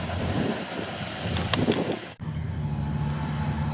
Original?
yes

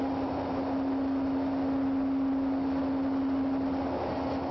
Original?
yes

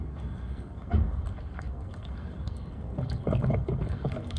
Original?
no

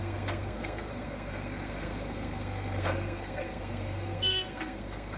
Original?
no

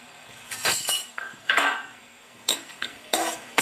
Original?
no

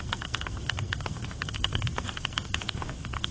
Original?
no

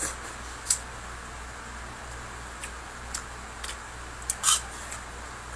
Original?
yes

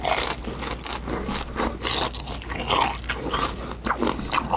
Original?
yes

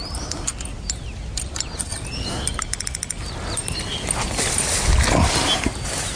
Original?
yes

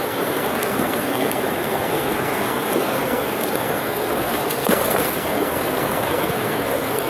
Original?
no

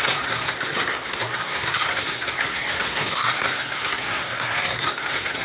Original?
no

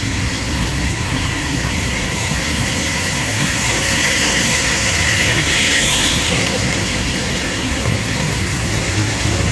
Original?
no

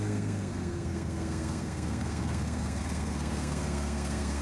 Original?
no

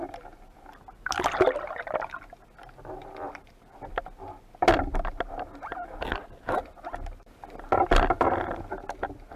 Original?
yes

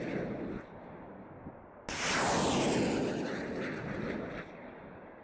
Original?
yes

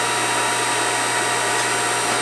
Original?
yes